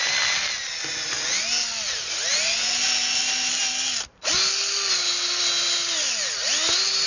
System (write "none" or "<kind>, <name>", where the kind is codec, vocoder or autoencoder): none